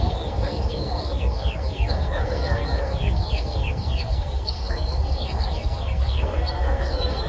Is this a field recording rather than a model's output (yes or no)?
no